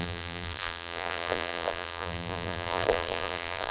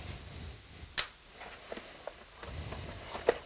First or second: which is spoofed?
first